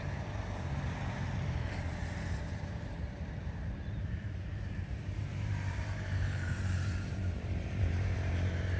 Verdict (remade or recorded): remade